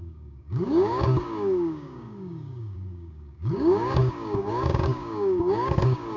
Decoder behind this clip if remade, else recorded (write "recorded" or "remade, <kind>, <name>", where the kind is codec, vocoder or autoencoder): remade, codec, DAC